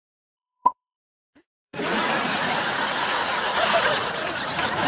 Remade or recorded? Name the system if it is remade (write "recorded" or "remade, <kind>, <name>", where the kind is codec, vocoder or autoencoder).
remade, vocoder, Vocos